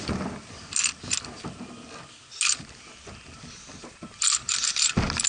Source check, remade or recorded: recorded